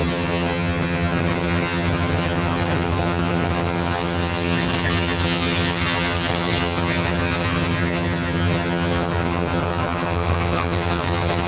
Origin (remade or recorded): remade